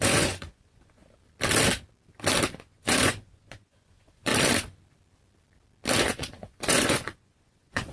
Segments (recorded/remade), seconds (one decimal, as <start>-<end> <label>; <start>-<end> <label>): 0.0-1.0 remade; 1.0-2.5 recorded; 2.5-4.3 remade; 4.3-6.0 recorded; 6.0-7.9 remade